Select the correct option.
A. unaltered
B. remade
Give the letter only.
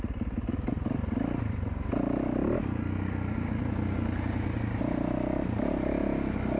A